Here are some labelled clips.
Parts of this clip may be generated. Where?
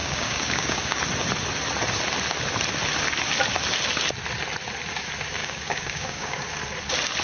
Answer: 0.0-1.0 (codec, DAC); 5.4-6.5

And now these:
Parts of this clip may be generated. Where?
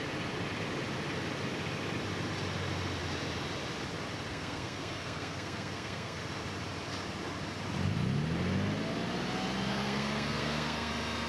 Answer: 4.3-6.2 (codec, SNAC); 9.7-10.9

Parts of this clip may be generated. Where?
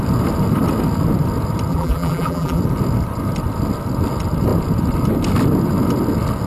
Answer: 1.7-2.6 (vocoder, BigVGAN v2)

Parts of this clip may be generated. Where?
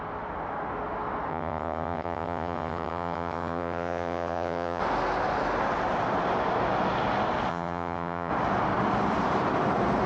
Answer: 1.3-4.8 (vocoder, HiFi-GAN); 7.5-8.3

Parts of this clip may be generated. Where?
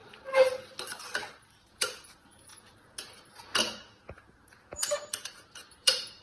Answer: 1.6-6.2 (vocoder, Vocos)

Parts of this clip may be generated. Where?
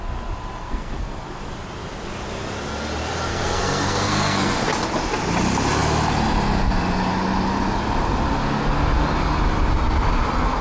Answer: 0.6-1.2 (codec, SNAC); 3.3-4.6